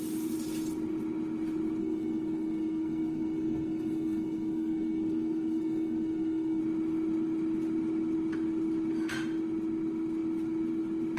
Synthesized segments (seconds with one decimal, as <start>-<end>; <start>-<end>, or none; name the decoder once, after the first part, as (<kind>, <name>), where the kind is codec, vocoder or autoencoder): 1.8-6.6 (codec, SNAC)